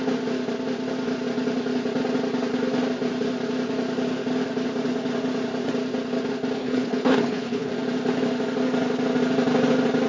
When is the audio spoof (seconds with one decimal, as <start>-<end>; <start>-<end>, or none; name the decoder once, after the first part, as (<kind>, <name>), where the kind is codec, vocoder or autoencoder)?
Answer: 6.6-7.7 (codec, HILCodec)